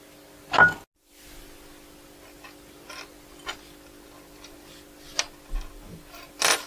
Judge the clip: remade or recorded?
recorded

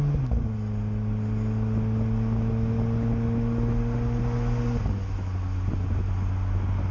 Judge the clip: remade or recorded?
recorded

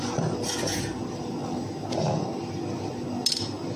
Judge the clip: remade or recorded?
recorded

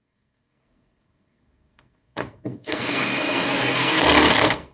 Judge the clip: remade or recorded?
remade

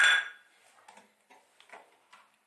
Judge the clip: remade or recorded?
recorded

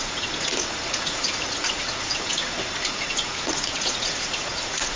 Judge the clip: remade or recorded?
remade